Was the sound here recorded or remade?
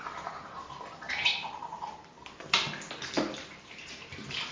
recorded